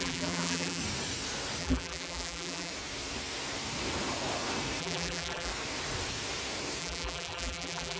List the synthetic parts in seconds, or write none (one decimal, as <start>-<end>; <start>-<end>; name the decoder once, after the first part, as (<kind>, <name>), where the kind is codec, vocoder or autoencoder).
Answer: 0.0-0.8 (vocoder, BigVGAN v2); 1.6-2.7; 4.8-5.5; 6.8-8.0